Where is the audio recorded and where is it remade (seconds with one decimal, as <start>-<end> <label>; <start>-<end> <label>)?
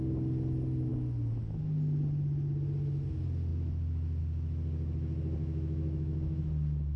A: 0.0-5.4 recorded; 5.4-6.4 remade; 6.4-7.0 recorded